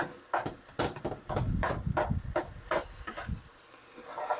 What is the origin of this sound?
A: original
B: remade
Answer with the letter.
A